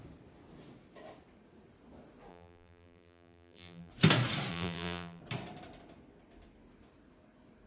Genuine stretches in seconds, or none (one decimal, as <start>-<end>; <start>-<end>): 0.0-2.3; 3.9-4.5; 5.2-7.7